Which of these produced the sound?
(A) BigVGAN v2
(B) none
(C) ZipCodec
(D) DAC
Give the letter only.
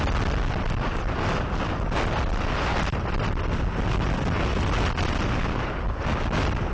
B